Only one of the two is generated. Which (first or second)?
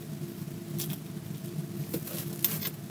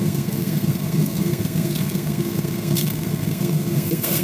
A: second